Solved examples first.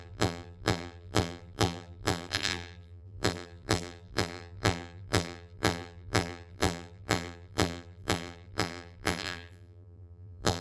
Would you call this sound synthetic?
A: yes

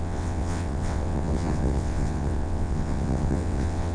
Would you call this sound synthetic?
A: yes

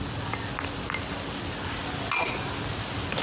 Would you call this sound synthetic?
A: no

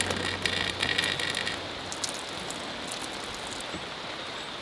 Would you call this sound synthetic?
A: no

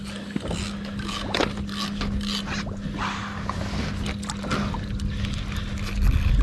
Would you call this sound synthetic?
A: no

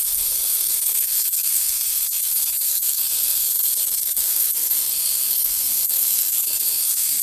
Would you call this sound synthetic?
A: yes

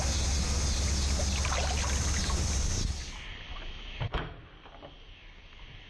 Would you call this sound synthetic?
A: no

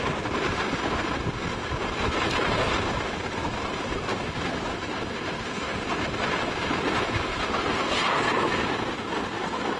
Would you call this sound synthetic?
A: no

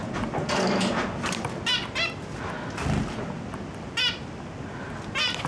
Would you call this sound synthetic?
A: no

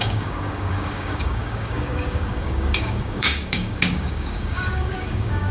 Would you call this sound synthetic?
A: yes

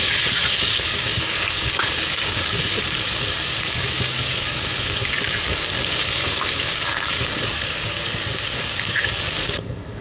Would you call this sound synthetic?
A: yes